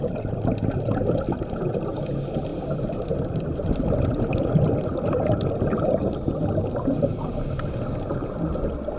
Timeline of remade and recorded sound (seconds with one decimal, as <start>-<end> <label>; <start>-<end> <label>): 0.0-2.5 recorded; 2.5-4.9 remade; 4.9-9.0 recorded